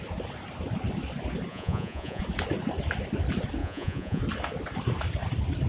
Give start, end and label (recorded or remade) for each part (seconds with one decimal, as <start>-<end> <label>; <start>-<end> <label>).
0.0-1.5 recorded; 1.5-2.2 remade; 2.2-3.6 recorded; 3.6-4.2 remade; 4.2-5.7 recorded